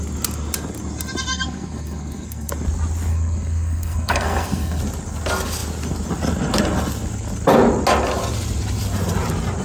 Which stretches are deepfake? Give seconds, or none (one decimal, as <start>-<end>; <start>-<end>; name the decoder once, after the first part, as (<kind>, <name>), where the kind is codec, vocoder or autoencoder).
1.3-2.5 (codec, SNAC); 3.1-4.8